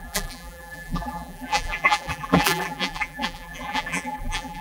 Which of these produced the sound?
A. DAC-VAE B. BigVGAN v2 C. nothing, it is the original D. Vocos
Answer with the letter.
B